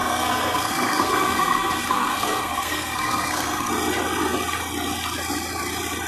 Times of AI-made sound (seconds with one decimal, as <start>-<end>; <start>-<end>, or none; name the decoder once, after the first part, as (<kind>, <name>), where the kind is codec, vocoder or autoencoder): 0.0-3.7 (codec, SNAC)